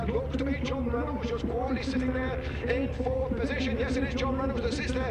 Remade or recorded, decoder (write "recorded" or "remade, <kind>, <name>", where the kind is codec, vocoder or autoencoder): recorded